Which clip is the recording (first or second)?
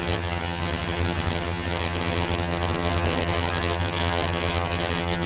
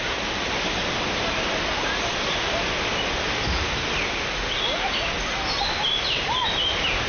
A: second